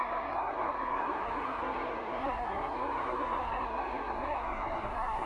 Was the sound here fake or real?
fake